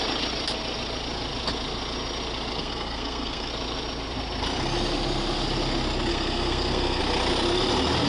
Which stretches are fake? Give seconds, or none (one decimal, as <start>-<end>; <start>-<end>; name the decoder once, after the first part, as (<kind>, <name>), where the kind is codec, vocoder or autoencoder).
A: 2.6-3.5 (codec, SNAC); 6.1-7.0